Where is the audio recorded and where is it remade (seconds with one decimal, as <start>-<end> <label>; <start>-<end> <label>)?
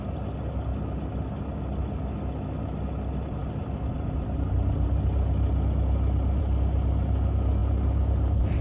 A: 0.0-8.6 recorded